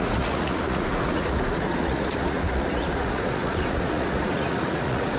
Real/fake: fake